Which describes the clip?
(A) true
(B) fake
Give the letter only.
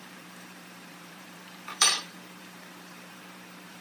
B